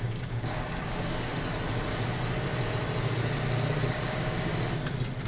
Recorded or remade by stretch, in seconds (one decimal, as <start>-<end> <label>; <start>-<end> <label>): 0.0-1.3 remade; 1.3-3.9 recorded; 3.9-4.5 remade; 4.5-5.3 recorded